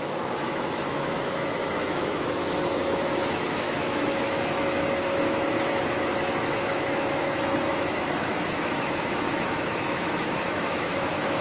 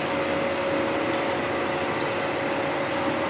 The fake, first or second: first